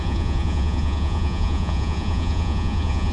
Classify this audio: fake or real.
fake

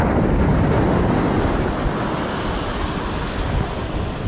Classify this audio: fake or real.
real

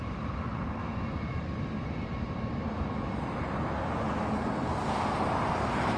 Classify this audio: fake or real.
real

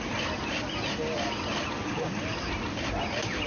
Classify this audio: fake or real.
real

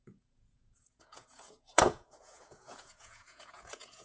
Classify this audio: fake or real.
fake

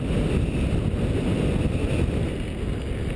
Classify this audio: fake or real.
real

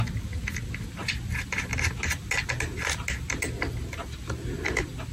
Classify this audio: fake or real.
real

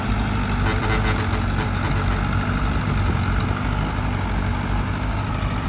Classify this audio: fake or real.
real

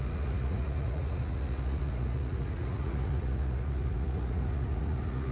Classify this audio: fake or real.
fake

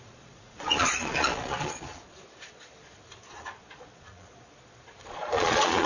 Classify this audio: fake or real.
fake